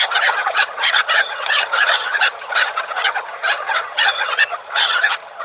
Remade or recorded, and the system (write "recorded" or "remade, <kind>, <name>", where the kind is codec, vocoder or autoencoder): remade, vocoder, HiFi-GAN